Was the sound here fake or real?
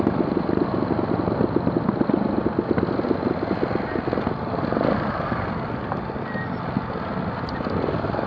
real